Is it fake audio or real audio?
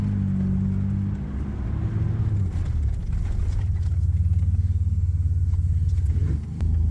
real